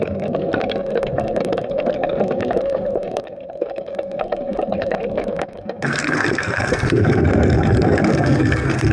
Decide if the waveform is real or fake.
fake